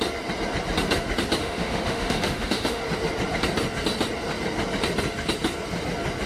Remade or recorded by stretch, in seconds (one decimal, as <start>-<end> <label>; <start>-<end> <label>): 0.0-1.4 recorded; 1.4-2.8 remade; 2.8-6.3 recorded

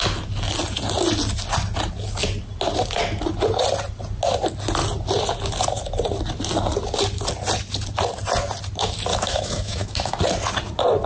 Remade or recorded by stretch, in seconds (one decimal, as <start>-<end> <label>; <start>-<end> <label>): 0.0-9.1 recorded; 9.1-10.2 remade; 10.2-11.1 recorded